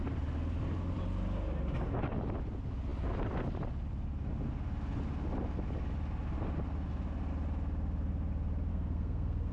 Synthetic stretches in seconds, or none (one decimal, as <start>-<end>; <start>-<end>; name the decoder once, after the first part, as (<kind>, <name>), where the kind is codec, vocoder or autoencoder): 8.7-9.5 (codec, SNAC)